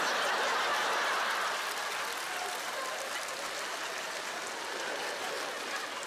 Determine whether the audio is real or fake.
real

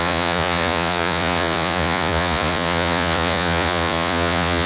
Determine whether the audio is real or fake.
fake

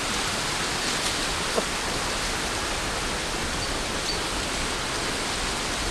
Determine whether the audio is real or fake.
real